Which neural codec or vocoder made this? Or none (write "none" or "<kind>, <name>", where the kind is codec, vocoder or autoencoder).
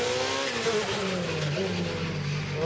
none